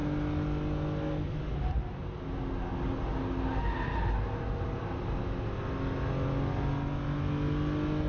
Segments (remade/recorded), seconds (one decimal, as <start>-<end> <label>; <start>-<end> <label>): 0.0-8.1 recorded